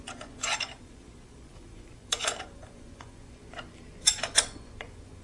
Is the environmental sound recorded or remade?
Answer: remade